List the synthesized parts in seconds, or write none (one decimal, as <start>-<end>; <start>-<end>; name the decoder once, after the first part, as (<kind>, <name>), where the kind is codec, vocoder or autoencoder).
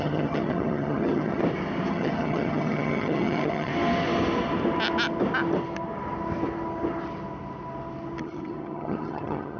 0.0-1.4 (vocoder, HiFi-GAN); 1.9-3.7; 8.2-9.6